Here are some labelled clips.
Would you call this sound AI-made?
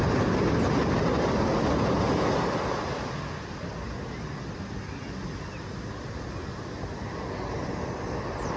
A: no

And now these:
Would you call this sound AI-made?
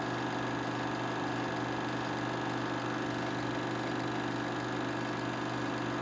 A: no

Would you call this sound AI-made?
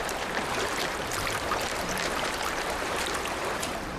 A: yes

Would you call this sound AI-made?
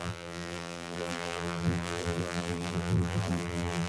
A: yes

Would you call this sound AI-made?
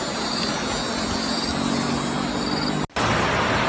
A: no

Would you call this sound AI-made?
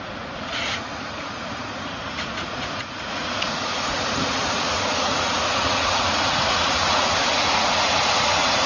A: yes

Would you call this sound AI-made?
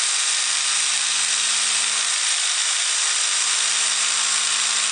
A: no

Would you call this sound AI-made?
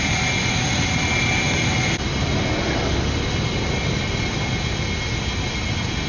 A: no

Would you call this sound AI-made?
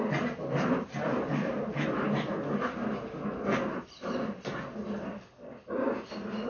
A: no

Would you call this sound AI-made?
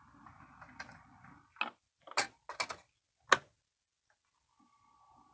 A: no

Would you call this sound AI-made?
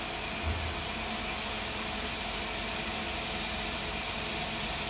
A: no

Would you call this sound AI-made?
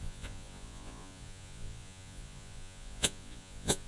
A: yes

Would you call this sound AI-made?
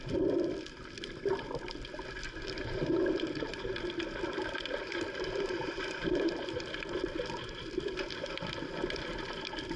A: yes